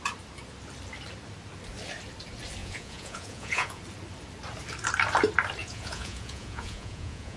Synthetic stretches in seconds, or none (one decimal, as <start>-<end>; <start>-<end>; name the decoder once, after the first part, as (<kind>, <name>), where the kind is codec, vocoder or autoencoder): 2.6-3.8 (vocoder, Vocos); 5.6-7.4